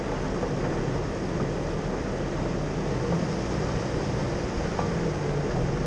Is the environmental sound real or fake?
real